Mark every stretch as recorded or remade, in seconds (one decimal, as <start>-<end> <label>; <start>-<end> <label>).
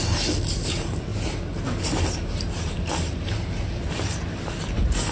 0.0-5.1 remade